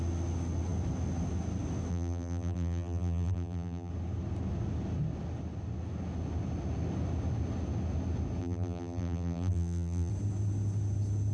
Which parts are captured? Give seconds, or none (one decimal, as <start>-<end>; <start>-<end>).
0.0-1.9; 3.9-8.4; 10.1-11.3